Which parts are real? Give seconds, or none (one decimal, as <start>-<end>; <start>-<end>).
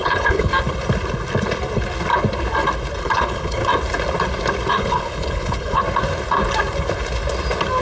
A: 0.5-3.0; 3.6-4.7; 5.8-7.8